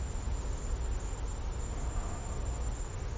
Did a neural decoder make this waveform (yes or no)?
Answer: no